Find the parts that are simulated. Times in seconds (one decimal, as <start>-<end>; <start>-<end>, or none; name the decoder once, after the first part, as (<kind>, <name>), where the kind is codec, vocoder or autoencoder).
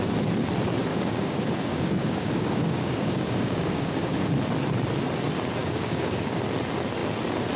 0.9-4.3 (codec, DAC); 5.6-6.4